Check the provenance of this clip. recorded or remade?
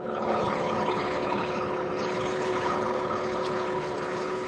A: remade